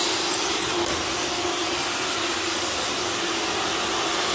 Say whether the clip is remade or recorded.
recorded